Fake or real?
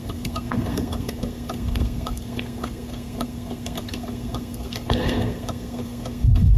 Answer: fake